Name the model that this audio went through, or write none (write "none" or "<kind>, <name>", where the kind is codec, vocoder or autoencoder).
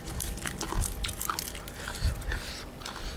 none